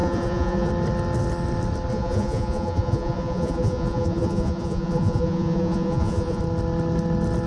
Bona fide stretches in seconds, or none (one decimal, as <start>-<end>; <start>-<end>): 0.7-1.9; 6.4-7.5